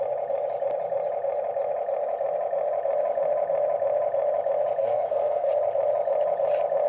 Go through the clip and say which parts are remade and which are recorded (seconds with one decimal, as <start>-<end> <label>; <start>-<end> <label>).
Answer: 0.0-4.8 recorded; 4.8-5.5 remade; 5.5-6.9 recorded